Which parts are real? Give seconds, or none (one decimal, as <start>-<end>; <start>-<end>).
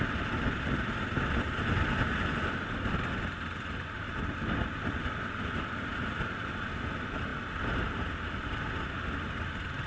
0.0-9.9